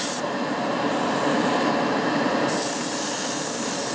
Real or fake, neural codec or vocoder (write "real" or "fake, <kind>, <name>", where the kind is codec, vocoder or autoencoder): fake, vocoder, BigVGAN v2